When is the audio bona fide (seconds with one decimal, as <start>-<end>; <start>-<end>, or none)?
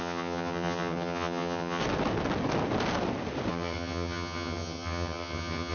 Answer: 1.8-3.5